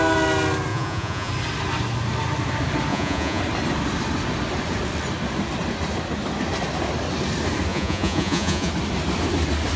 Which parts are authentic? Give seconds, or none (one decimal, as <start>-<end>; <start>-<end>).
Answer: 0.0-0.7; 1.3-2.9; 3.4-7.7; 8.7-9.8